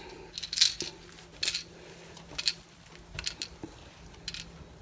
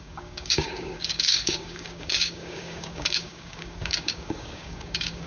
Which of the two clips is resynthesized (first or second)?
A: second